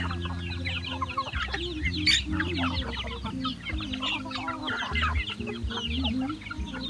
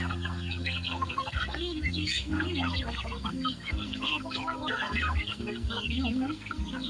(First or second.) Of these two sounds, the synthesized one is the second